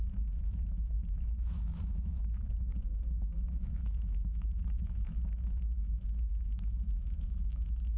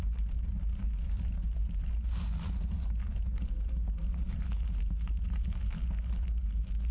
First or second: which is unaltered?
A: second